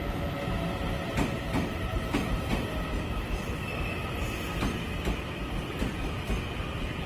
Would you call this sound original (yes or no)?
yes